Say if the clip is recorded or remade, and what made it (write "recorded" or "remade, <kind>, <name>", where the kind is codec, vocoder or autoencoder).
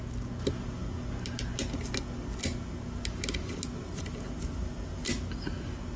recorded